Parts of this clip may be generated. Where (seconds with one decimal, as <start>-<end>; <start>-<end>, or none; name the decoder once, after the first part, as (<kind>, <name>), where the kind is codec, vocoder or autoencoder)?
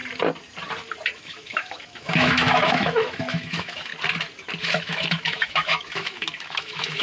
1.2-3.9 (autoencoder, DAC-VAE); 4.6-7.0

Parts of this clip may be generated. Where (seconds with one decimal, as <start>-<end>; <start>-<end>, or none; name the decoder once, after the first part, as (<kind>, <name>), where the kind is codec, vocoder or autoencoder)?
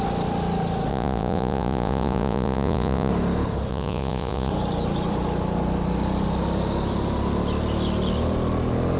0.9-3.1 (vocoder, Vocos); 3.7-4.5